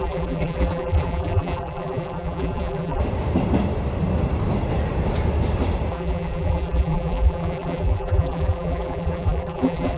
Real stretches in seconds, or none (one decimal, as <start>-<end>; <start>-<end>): 3.0-5.9